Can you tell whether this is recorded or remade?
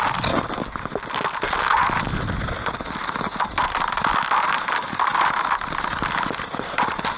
recorded